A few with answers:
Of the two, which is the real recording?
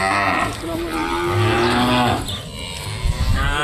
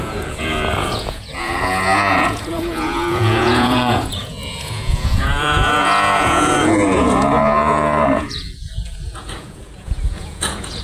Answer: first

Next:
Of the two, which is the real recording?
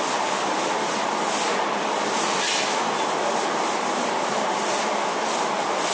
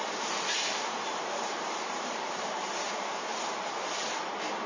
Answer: first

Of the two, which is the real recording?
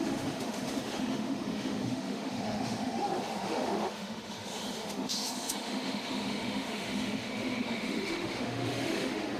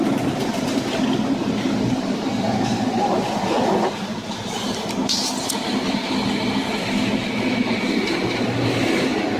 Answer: second